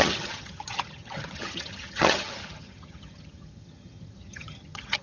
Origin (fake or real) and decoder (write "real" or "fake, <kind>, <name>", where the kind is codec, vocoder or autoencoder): fake, vocoder, HiFi-GAN